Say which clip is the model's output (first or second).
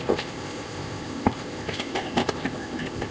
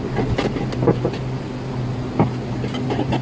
first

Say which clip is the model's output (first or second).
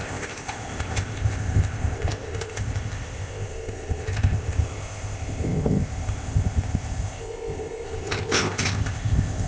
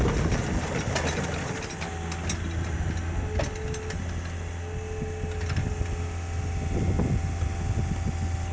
first